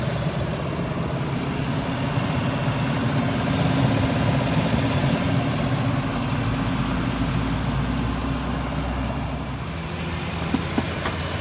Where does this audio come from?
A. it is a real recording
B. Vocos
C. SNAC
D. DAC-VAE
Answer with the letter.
A